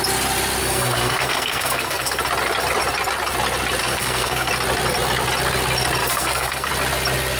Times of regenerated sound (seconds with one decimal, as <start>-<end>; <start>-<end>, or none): 0.6-2.2; 3.8-4.5; 6.0-6.7